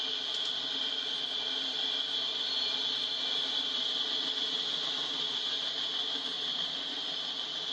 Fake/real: real